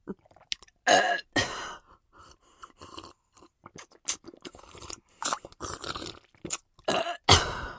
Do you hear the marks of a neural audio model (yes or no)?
no